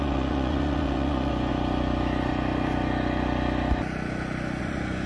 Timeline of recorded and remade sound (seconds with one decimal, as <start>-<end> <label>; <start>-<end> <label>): 0.0-1.5 remade; 1.5-4.6 recorded; 4.6-5.1 remade